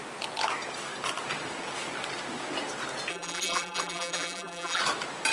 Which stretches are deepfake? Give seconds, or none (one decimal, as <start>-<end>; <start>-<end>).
3.1-4.8